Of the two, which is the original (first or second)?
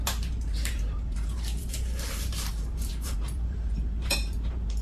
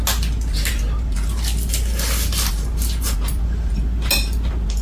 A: second